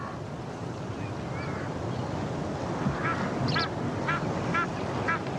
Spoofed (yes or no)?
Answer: no